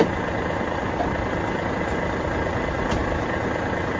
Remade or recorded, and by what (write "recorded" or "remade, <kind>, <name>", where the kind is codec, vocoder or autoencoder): remade, vocoder, BigVGAN v2